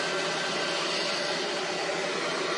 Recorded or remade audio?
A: recorded